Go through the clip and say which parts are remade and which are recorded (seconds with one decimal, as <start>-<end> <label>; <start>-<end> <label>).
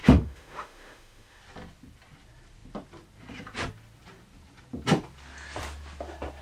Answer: 0.0-1.4 remade; 1.4-6.4 recorded